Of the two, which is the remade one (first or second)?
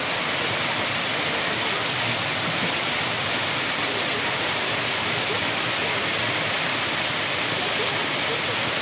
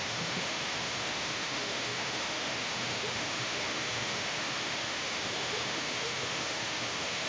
second